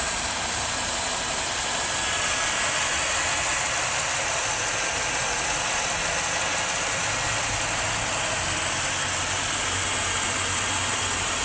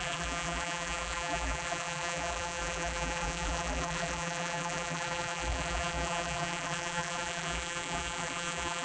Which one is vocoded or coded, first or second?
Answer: second